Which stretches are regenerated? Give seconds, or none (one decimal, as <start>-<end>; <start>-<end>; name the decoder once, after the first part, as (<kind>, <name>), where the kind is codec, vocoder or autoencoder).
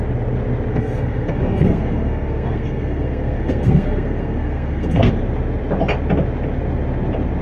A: 0.7-5.1 (codec, SNAC)